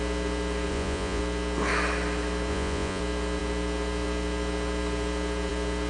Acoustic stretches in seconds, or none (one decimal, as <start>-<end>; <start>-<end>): 0.0-0.7; 1.2-2.5; 3.0-5.9